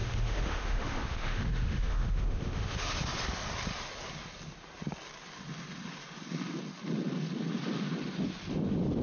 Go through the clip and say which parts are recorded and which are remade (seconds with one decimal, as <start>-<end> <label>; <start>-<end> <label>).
0.0-2.8 remade; 2.8-9.0 recorded